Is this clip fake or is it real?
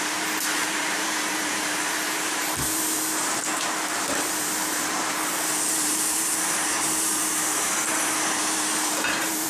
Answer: fake